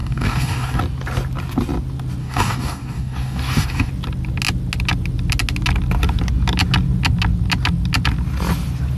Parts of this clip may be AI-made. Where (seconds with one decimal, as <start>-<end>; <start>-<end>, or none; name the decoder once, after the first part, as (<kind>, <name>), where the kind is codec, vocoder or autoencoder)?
0.0-0.8 (codec, DAC); 2.2-3.9